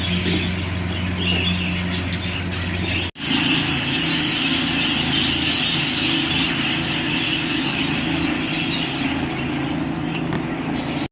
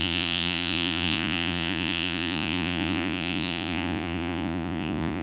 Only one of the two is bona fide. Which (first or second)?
first